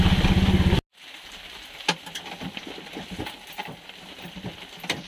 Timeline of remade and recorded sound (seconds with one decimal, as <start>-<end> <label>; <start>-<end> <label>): 0.0-5.1 recorded